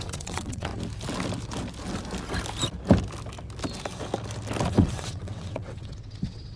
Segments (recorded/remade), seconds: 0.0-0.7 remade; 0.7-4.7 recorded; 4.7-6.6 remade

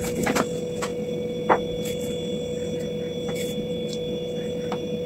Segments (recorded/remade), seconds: 0.0-5.1 recorded

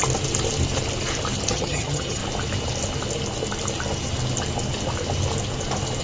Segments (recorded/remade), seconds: 0.0-1.5 recorded; 1.5-2.2 remade; 2.2-6.0 recorded

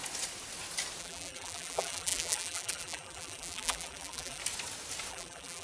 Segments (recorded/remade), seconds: 0.0-1.0 recorded; 1.0-4.4 remade; 4.4-5.1 recorded; 5.1-5.6 remade

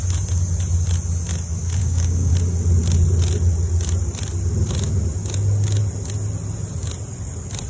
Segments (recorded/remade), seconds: 0.0-1.8 recorded; 1.8-2.3 remade; 2.3-7.7 recorded

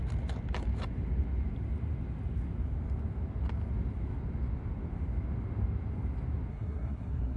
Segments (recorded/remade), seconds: 0.0-6.5 recorded; 6.5-7.4 remade